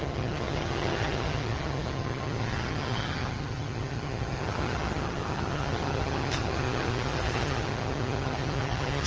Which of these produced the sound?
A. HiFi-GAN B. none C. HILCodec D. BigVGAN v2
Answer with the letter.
A